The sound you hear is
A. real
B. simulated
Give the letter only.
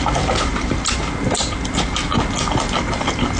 A